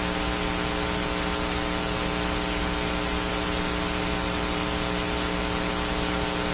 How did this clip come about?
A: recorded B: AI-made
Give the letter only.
A